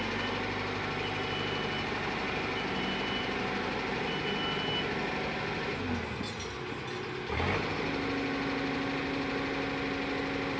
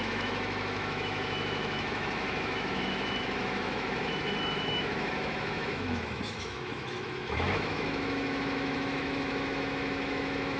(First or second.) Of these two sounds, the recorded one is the first